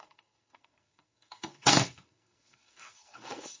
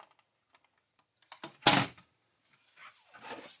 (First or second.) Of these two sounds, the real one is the second